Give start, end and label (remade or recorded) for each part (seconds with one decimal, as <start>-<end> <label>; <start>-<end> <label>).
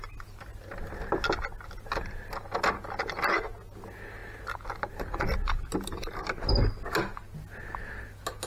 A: 0.0-8.5 recorded